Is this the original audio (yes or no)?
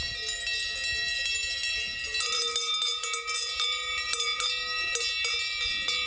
yes